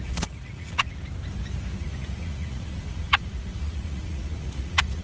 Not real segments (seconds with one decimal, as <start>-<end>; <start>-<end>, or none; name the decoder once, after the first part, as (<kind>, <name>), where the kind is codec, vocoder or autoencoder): 0.0-1.0 (vocoder, Vocos); 1.8-5.0

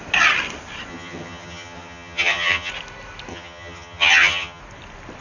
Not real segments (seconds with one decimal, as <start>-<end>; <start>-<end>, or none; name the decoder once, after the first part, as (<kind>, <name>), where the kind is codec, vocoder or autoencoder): 0.9-2.7 (vocoder, HiFi-GAN); 3.3-4.6

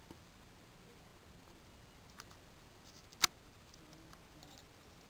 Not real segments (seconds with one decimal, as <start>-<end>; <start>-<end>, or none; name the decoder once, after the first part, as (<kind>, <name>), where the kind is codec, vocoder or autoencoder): none

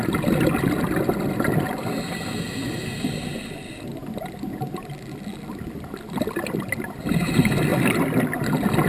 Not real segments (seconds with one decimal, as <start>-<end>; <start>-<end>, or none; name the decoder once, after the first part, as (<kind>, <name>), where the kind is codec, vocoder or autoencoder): none

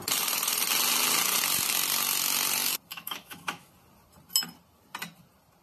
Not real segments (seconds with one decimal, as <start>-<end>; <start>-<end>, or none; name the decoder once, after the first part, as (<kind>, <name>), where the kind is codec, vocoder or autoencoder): 2.9-3.7 (autoencoder, DAC-VAE)

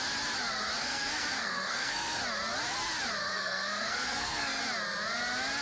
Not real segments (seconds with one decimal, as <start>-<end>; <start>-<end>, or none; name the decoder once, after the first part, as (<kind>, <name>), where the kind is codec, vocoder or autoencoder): 0.8-2.2 (codec, SNAC); 3.2-4.6

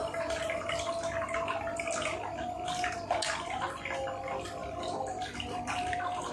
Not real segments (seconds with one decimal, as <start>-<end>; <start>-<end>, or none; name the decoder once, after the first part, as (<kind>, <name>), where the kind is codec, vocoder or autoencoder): 4.6-6.3 (vocoder, BigVGAN v2)

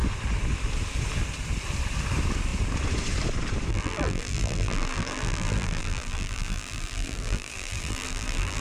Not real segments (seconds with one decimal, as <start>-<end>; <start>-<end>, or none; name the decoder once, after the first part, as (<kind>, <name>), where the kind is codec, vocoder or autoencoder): 3.7-8.6 (vocoder, BigVGAN v2)